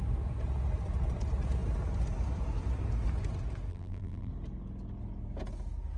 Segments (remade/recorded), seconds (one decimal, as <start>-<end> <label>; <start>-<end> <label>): 0.0-3.7 recorded; 3.7-4.3 remade; 4.3-6.0 recorded